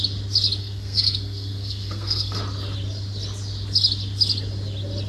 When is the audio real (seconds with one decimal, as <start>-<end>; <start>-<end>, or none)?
0.0-0.6; 2.4-5.1